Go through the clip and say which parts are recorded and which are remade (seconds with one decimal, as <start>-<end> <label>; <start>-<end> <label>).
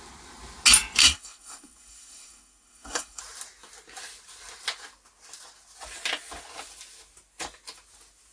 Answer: 0.0-1.0 recorded; 1.0-3.2 remade; 3.2-8.3 recorded